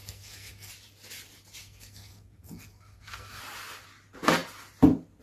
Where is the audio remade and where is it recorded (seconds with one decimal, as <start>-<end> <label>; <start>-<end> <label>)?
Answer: 0.0-0.7 remade; 0.7-1.6 recorded; 1.6-3.4 remade; 3.4-5.2 recorded